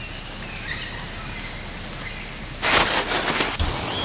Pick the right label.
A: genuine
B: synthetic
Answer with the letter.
A